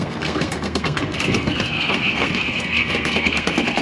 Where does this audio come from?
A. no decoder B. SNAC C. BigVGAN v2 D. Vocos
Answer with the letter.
B